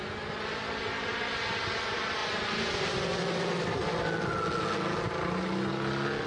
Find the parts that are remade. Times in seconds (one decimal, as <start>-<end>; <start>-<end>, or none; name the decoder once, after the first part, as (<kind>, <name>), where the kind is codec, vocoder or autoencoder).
none